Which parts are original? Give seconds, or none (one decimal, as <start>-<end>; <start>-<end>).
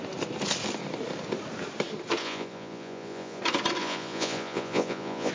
0.0-2.2; 3.4-3.8